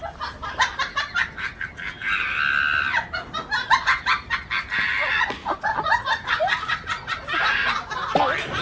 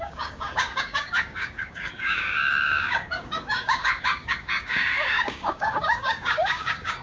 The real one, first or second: first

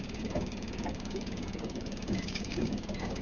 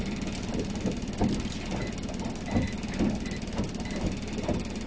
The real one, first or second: second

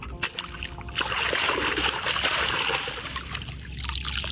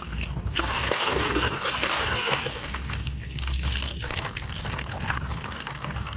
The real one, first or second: first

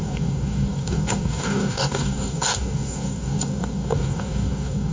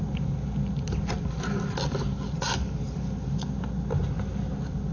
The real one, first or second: second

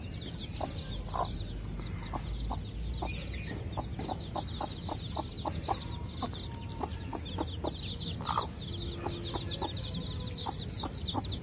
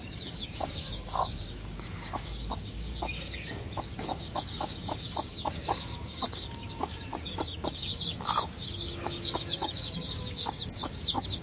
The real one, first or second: first